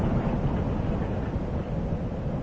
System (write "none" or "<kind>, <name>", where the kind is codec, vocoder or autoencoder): none